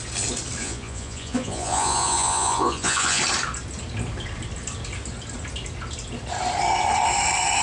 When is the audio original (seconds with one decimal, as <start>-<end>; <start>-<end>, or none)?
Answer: 0.0-0.6; 3.2-7.6